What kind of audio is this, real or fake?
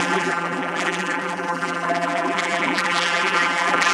fake